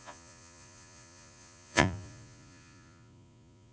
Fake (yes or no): yes